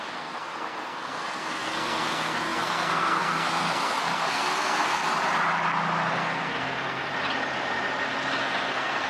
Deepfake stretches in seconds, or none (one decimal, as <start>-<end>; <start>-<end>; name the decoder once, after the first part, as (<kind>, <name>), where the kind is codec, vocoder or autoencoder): 0.0-5.0 (codec, SNAC); 6.1-7.1; 8.4-9.1